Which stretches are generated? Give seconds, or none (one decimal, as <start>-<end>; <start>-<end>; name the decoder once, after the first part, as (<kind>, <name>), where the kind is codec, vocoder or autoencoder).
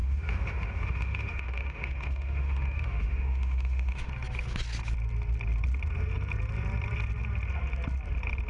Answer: 0.0-4.1 (autoencoder, DAC-VAE)